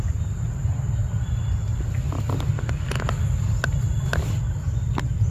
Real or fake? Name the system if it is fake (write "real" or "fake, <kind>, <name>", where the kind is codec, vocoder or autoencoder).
real